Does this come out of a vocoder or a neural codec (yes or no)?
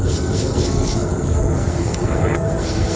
yes